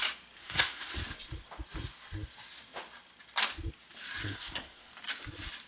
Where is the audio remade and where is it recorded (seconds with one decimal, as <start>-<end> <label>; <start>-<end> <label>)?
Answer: 0.0-0.4 recorded; 0.4-1.0 remade; 1.0-4.2 recorded; 4.2-4.9 remade; 4.9-5.7 recorded